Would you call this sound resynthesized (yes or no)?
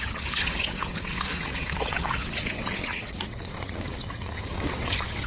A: yes